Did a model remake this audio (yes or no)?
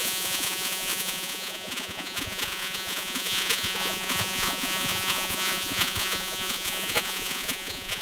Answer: yes